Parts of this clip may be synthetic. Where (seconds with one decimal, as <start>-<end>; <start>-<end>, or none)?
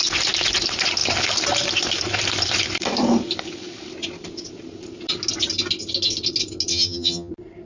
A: 6.7-7.3